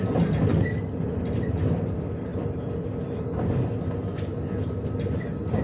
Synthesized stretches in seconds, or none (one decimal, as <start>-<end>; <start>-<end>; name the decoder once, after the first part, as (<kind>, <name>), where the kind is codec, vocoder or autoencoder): none